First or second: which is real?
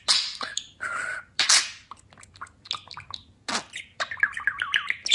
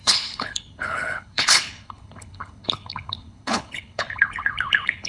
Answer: first